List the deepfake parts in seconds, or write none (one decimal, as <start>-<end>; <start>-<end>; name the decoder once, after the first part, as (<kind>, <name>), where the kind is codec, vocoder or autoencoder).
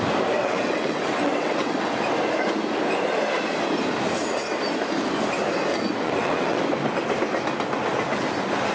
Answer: 0.4-2.0 (vocoder, WaveNeXt); 5.7-6.6